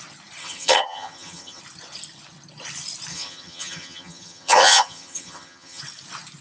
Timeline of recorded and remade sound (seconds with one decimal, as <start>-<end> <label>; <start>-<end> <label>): 0.0-0.4 recorded; 0.4-1.6 remade; 1.6-3.1 recorded; 3.1-5.8 remade; 5.8-6.4 recorded